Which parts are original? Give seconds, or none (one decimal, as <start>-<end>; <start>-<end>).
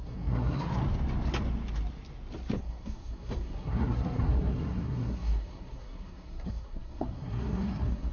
0.7-2.6